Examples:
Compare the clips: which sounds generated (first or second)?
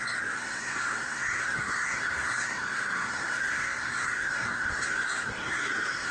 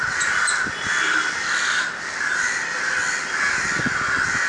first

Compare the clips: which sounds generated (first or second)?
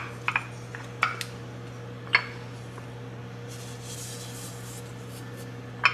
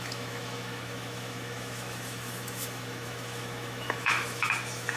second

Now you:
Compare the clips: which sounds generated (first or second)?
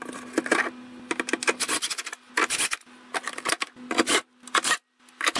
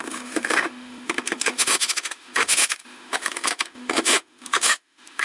second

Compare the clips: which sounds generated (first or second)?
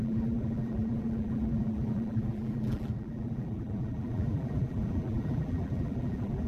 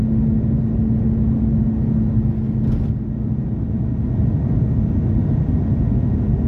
first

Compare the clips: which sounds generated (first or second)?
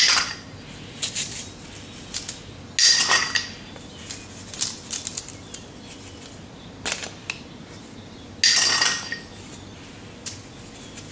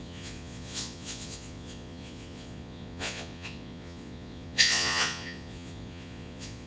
second